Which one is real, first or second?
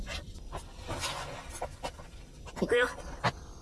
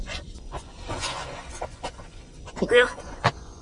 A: first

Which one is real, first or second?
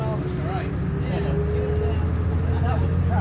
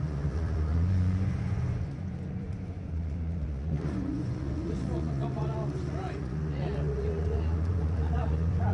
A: first